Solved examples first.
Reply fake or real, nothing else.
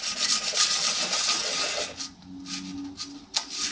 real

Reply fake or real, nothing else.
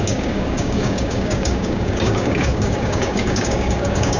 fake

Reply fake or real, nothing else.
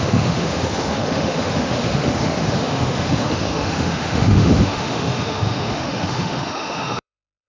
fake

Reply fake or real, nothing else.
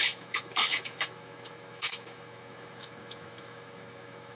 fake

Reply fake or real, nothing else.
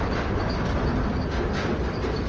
real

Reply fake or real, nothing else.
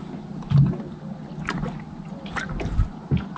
real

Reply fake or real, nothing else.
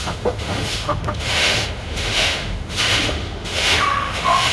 fake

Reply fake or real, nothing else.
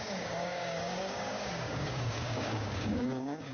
fake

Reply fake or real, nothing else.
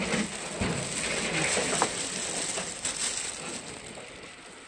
real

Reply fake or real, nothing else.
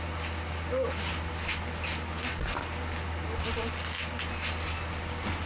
real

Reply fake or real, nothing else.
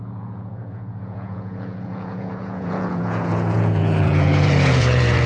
fake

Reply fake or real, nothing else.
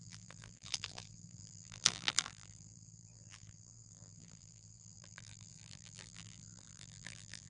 fake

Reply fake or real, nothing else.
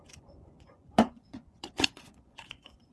fake